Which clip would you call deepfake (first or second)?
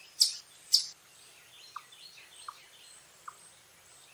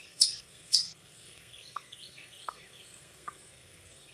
second